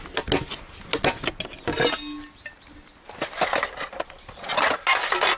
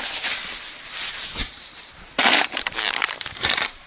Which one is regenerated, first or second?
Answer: second